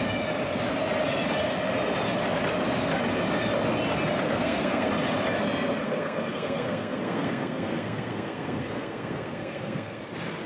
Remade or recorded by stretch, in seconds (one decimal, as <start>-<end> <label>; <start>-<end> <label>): 0.0-4.3 recorded; 4.3-4.9 remade; 4.9-5.8 recorded; 5.8-10.0 remade; 10.0-10.5 recorded